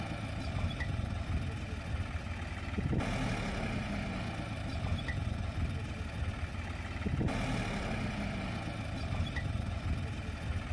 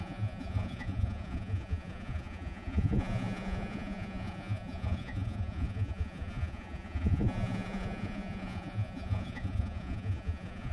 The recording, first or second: first